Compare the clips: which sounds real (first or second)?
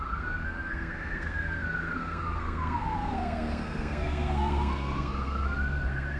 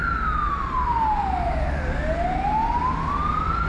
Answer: second